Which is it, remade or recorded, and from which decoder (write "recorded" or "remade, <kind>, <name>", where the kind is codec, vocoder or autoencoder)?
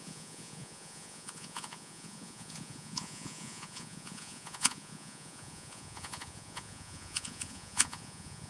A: remade, vocoder, Vocos